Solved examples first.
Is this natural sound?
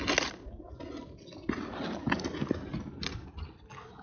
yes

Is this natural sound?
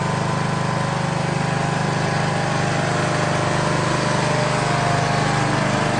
yes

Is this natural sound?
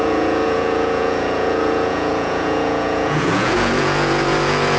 no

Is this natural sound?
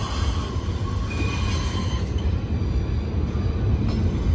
yes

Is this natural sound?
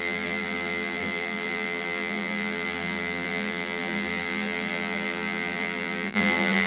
no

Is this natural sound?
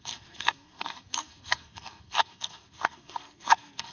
no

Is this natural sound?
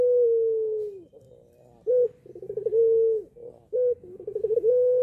yes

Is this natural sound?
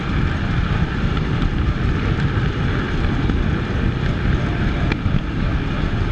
yes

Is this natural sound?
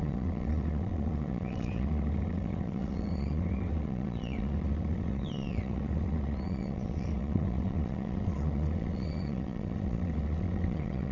no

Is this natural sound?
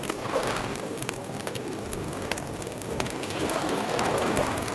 no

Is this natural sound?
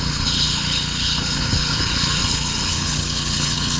no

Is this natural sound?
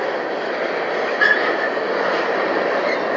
no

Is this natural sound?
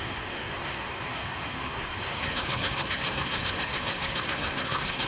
no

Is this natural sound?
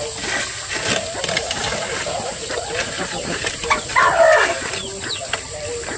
yes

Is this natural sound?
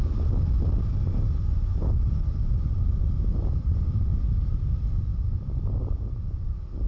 yes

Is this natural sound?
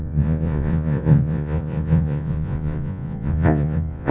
no